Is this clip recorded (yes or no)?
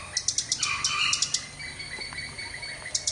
yes